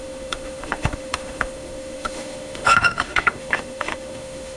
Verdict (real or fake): fake